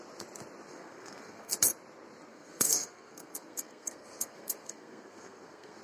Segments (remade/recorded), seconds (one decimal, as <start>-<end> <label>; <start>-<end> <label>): 0.0-0.7 recorded; 0.7-1.5 remade; 1.5-2.3 recorded; 2.3-5.8 remade